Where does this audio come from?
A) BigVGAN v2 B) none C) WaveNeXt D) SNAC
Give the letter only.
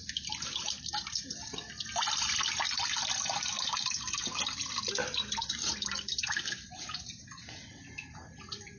A